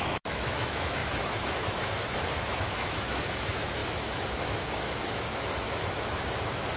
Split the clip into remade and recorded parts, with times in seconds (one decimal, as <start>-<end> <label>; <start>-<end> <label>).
0.0-6.8 remade